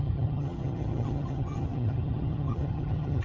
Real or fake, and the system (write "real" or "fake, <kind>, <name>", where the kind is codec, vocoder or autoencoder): fake, vocoder, HiFi-GAN